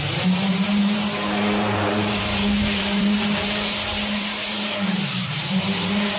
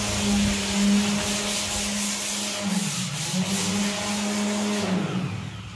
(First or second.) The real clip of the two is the second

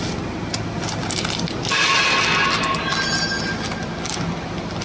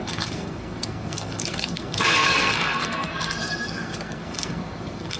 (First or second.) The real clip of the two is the first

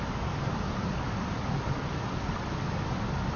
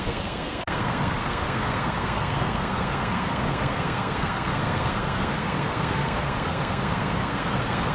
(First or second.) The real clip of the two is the first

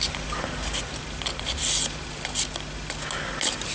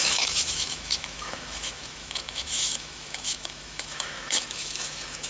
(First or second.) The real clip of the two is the first